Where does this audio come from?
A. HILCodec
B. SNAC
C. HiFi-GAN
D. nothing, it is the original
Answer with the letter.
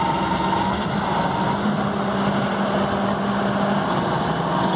D